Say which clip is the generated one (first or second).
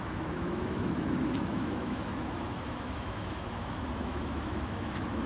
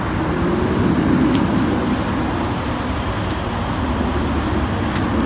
first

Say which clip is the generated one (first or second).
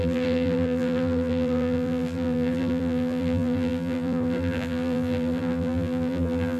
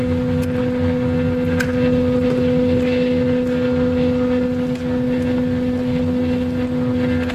first